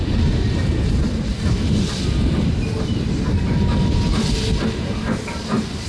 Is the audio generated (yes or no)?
no